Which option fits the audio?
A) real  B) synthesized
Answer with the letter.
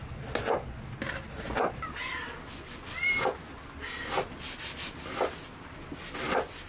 A